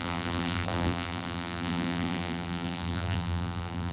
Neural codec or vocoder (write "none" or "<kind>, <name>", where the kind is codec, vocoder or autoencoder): vocoder, BigVGAN v2